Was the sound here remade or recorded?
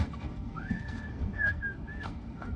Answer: remade